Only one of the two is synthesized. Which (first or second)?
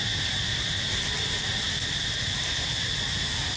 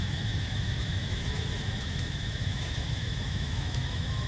second